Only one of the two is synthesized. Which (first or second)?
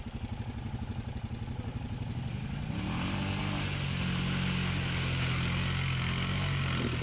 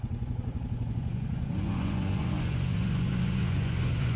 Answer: second